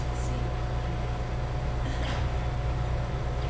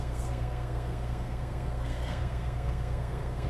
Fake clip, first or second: second